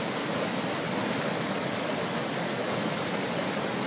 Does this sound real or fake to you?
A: real